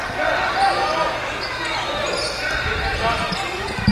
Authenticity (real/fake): real